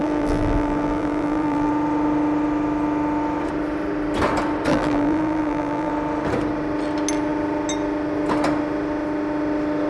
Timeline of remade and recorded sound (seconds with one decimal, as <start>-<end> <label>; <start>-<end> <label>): 0.0-1.7 remade; 1.7-4.7 recorded; 4.7-5.9 remade; 5.9-9.9 recorded